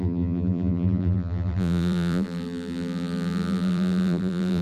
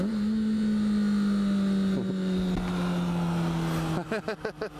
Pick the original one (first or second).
second